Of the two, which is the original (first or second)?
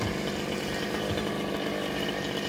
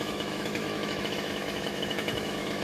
first